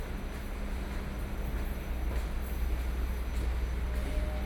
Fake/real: real